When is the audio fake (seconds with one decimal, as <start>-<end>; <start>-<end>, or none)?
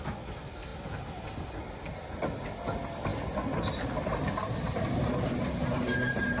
none